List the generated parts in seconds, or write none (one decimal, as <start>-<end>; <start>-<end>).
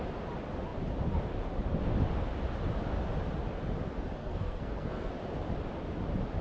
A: 4.2-5.1